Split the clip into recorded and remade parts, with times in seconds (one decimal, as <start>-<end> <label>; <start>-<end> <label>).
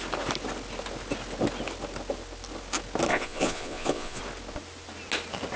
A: 0.0-3.1 recorded; 3.1-4.2 remade; 4.2-5.6 recorded